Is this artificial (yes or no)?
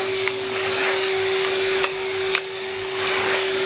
yes